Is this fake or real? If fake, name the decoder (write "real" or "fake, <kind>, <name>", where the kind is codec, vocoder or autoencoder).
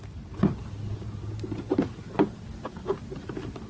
real